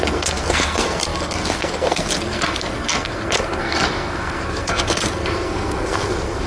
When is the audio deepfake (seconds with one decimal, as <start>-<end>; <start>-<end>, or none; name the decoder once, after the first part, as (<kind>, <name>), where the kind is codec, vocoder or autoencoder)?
0.0-6.5 (codec, SNAC)